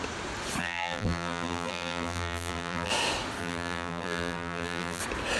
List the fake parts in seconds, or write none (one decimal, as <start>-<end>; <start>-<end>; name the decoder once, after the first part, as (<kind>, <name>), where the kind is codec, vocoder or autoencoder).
0.6-2.9 (vocoder, BigVGAN v2); 3.4-5.0